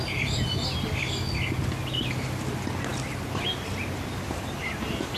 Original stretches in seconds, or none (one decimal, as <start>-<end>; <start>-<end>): 0.0-5.2